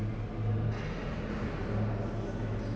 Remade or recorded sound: recorded